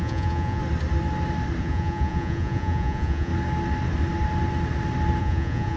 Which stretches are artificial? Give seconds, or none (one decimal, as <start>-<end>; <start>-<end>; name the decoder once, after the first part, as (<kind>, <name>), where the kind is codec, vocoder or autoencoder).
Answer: 0.0-0.6 (vocoder, Vocos); 1.6-3.3; 5.2-5.8